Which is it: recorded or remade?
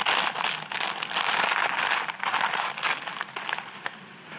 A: recorded